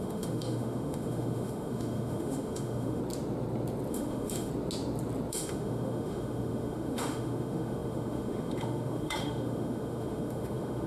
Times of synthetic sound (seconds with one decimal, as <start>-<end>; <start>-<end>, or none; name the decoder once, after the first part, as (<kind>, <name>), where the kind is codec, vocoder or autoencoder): 0.0-3.0 (autoencoder, DAC-VAE); 3.9-4.5; 5.3-10.9